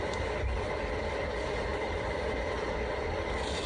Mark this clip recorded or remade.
recorded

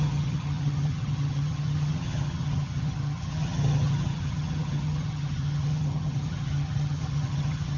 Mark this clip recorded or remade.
remade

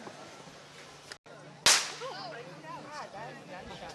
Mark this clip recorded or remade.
recorded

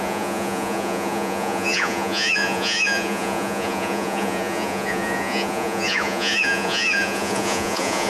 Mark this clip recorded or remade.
remade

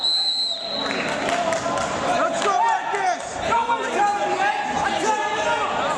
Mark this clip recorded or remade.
recorded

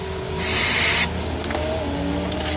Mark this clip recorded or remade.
recorded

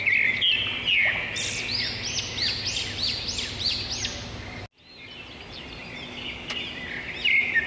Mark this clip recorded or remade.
recorded